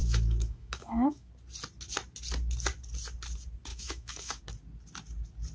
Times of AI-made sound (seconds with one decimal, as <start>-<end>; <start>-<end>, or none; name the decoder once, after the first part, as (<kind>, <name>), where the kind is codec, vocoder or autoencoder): 0.0-1.3 (autoencoder, DAC-VAE); 3.7-4.4

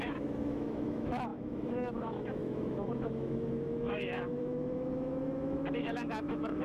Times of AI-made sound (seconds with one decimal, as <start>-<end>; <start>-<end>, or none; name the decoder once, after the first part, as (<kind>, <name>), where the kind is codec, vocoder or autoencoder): 0.0-6.6 (autoencoder, DAC-VAE)

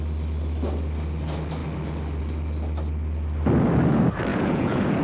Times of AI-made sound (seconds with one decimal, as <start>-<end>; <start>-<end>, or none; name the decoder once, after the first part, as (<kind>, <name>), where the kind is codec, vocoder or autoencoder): 4.3-5.0 (vocoder, Vocos)

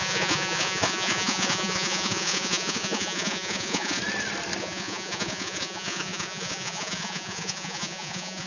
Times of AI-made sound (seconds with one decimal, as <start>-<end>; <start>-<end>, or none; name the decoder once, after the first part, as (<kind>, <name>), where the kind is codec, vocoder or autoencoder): 0.0-4.0 (vocoder, Vocos); 4.6-8.5